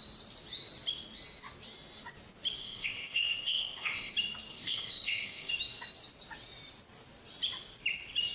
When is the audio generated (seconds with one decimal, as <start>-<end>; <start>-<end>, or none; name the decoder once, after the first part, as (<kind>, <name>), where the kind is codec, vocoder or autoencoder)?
2.6-4.1 (codec, ZipCodec); 4.5-5.5